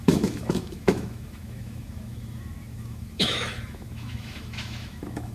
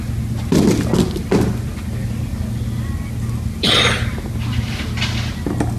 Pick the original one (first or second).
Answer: second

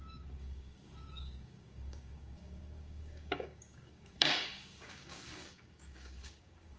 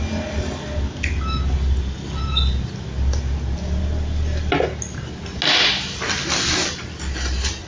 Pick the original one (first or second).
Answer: second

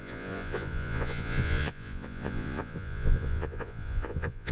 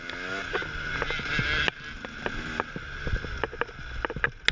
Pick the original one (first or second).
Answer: second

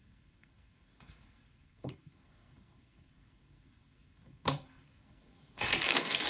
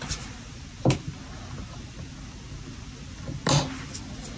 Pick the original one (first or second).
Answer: second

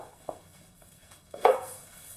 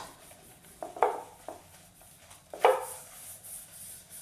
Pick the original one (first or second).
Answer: second